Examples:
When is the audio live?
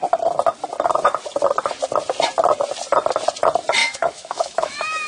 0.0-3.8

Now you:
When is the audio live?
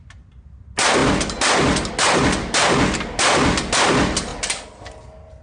0.0-5.4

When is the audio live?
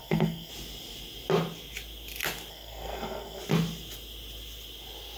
0.5-2.5; 3.4-5.2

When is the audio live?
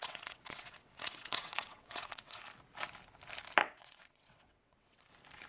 2.4-3.6; 5.1-5.5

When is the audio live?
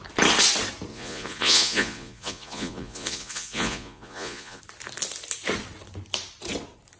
0.0-0.9; 4.6-7.0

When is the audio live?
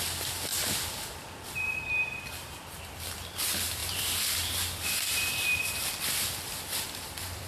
none